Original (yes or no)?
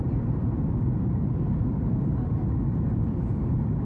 no